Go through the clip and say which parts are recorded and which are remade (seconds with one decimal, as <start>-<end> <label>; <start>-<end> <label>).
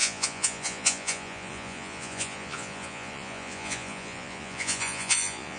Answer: 0.0-5.6 remade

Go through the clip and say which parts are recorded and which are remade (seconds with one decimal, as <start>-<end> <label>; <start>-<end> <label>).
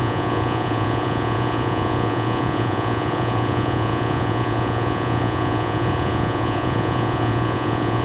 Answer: 0.0-8.0 remade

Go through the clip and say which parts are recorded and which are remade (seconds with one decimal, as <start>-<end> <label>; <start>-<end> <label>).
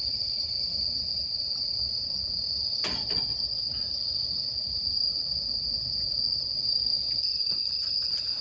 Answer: 0.0-3.0 recorded; 3.0-3.8 remade; 3.8-5.1 recorded; 5.1-7.6 remade; 7.6-8.4 recorded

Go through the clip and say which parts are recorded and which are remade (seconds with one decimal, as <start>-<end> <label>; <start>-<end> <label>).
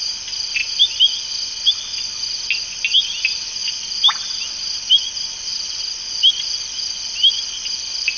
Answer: 0.0-8.2 recorded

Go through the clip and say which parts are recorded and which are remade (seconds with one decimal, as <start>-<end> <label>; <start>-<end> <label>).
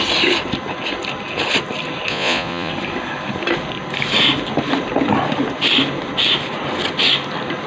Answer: 0.0-2.1 recorded; 2.1-2.7 remade; 2.7-7.7 recorded